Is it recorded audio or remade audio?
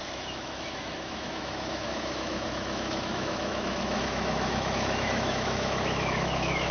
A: remade